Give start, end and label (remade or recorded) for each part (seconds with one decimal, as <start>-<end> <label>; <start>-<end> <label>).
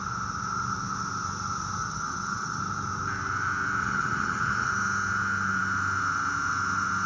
0.0-1.8 recorded; 1.8-2.6 remade; 2.6-3.8 recorded; 3.8-4.7 remade; 4.7-7.1 recorded